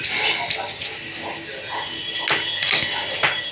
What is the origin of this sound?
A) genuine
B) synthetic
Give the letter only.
A